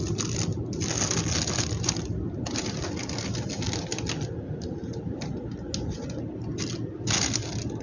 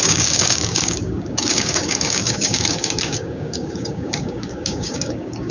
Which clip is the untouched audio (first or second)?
first